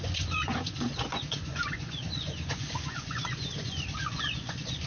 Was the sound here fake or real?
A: fake